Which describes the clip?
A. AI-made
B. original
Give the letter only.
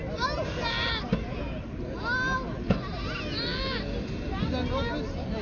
B